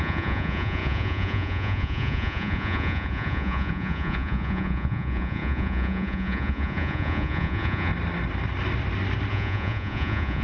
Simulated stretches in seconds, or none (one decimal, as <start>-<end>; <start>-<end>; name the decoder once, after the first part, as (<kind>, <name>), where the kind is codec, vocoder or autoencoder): 0.0-7.9 (vocoder, Vocos); 9.3-10.4